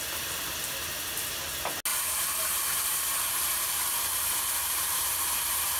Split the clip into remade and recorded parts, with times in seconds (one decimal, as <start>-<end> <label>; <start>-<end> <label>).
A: 0.0-1.9 recorded; 1.9-5.8 remade